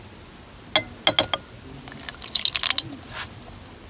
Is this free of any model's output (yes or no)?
yes